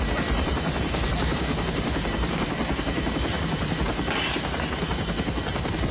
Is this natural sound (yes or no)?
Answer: no